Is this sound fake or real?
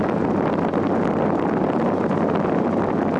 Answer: real